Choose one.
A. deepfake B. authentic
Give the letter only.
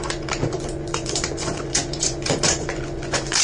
A